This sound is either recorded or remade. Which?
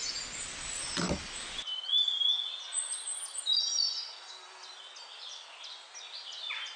recorded